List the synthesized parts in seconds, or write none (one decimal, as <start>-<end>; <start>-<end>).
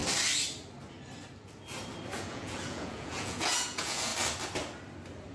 2.3-4.1